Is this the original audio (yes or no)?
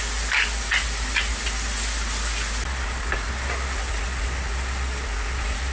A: yes